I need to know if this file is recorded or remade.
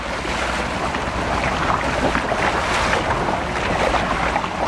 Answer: recorded